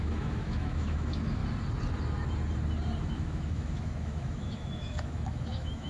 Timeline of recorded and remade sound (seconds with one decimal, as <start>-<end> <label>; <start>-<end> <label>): 0.0-1.4 remade; 1.4-3.0 recorded; 3.0-5.9 remade